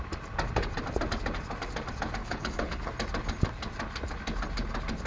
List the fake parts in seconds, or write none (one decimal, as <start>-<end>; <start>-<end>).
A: 2.2-2.9